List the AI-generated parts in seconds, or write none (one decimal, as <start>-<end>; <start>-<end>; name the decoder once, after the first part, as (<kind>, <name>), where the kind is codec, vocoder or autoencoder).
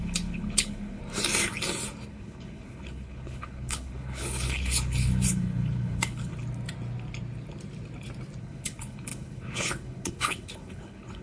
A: 0.0-1.0 (codec, HILCodec); 2.1-6.3; 8.4-11.2